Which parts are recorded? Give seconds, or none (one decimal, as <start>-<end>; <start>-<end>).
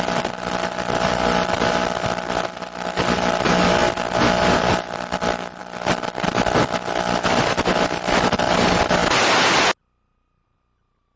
0.0-11.2